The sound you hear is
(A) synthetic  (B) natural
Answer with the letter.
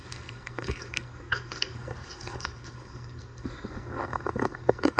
A